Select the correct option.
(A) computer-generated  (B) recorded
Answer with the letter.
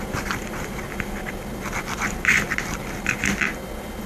A